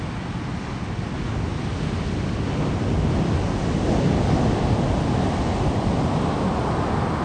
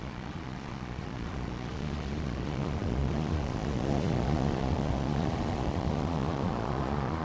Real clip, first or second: first